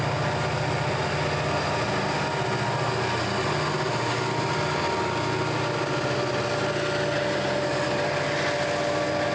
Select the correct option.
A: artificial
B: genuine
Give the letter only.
B